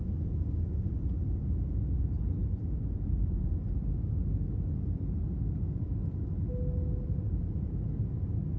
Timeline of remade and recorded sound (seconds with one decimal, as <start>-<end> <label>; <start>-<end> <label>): 0.0-8.6 recorded